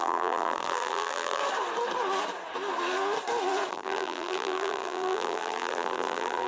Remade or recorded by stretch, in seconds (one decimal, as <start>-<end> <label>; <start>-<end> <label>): 0.0-1.4 remade; 1.4-3.7 recorded; 3.7-6.5 remade